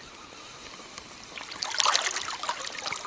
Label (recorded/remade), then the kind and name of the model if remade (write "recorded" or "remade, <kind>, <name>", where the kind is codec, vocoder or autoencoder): recorded